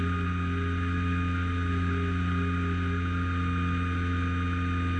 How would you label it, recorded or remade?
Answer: recorded